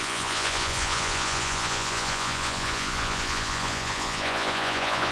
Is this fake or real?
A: fake